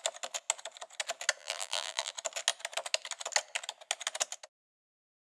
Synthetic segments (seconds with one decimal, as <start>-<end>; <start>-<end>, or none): 1.4-2.1